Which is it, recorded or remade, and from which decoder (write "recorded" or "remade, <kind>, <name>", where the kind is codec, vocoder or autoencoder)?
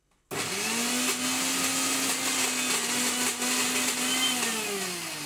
recorded